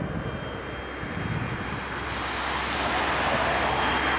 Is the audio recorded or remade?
recorded